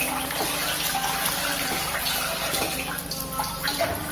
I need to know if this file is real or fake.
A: real